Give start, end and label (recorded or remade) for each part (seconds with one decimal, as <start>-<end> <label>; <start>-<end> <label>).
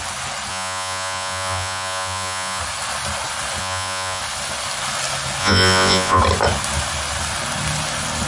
0.0-0.5 recorded; 0.5-2.6 remade; 2.6-3.6 recorded; 3.6-4.2 remade; 4.2-5.4 recorded; 5.4-6.2 remade; 6.2-8.3 recorded